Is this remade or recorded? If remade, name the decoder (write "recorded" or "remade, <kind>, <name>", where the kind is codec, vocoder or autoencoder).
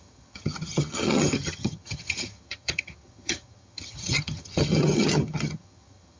remade, vocoder, HiFi-GAN